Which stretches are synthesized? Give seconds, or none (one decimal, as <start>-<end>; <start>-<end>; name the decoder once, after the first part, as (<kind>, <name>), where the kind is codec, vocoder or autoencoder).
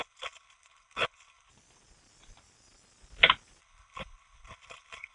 0.0-1.5 (codec, HILCodec); 3.6-5.1